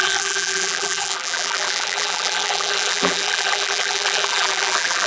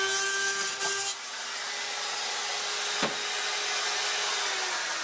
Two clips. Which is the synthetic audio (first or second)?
first